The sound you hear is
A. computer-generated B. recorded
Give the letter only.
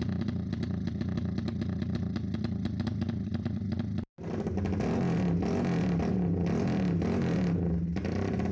B